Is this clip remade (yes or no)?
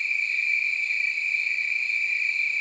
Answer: no